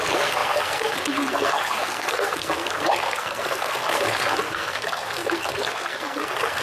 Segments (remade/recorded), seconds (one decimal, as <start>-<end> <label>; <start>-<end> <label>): 0.0-6.6 remade